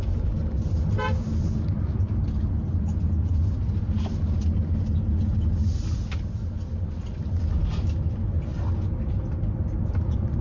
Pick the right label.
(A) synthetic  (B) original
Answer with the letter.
B